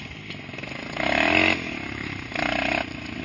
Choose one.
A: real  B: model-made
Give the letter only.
A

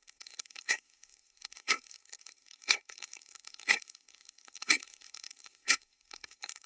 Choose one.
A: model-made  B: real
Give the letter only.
A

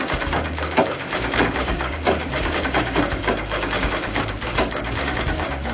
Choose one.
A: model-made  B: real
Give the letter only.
A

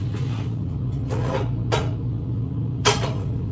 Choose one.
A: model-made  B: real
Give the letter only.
A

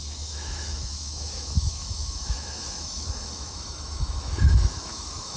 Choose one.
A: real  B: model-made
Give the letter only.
B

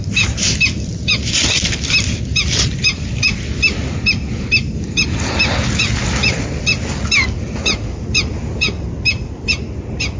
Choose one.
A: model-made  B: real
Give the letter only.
A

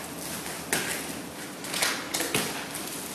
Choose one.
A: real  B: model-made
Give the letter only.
A